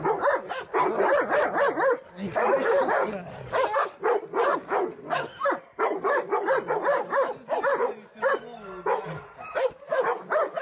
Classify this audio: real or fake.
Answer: real